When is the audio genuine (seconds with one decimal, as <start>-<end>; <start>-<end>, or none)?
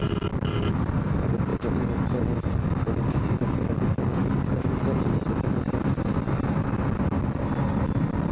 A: 0.0-8.3